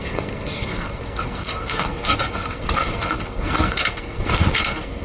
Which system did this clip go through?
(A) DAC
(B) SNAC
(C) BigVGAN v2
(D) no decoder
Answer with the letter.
B